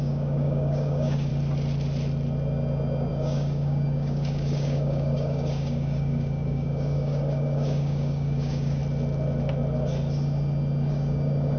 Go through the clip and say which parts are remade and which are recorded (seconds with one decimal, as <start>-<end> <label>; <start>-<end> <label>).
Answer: 0.0-1.3 remade; 1.3-3.1 recorded; 3.1-8.8 remade; 8.8-10.9 recorded; 10.9-11.6 remade